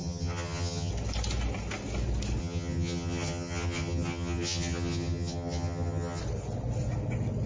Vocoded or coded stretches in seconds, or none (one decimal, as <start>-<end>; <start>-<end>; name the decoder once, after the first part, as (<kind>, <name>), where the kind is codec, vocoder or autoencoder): 0.0-0.9 (vocoder, HiFi-GAN); 2.4-6.2